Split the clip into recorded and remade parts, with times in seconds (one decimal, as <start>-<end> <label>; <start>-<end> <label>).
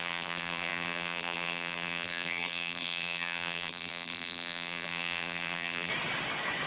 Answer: 0.0-5.9 remade; 5.9-6.7 recorded